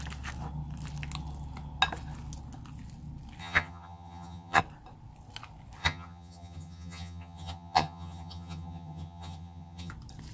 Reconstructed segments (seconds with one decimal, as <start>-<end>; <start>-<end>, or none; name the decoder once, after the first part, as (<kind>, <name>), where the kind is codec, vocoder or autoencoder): 3.4-4.6 (vocoder, HiFi-GAN); 5.8-9.9